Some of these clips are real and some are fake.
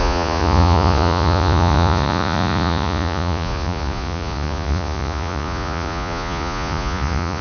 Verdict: fake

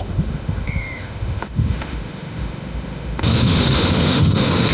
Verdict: fake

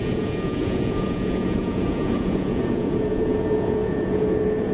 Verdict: fake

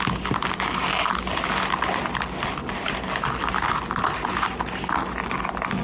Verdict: real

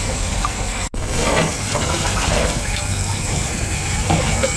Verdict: fake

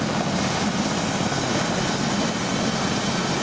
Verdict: real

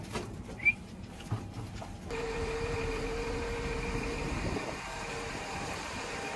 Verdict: fake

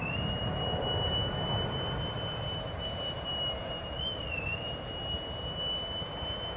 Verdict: real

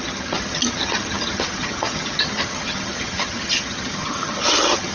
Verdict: fake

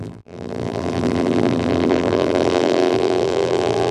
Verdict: fake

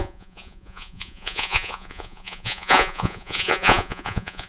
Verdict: fake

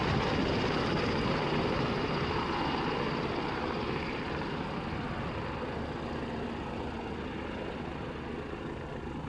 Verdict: real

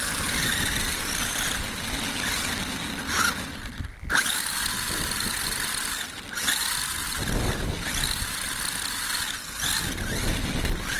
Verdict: real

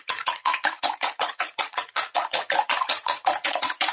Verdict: fake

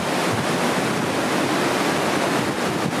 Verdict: real